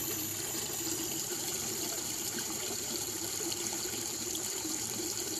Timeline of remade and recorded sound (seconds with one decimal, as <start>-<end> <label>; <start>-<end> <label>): 0.0-1.1 recorded; 1.1-5.4 remade